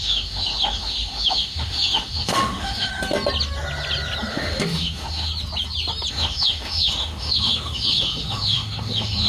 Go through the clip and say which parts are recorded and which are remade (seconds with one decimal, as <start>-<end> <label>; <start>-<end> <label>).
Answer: 0.0-2.9 remade; 2.9-4.3 recorded; 4.3-5.3 remade; 5.3-6.1 recorded; 6.1-9.3 remade